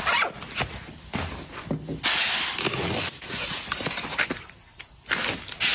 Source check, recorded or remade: recorded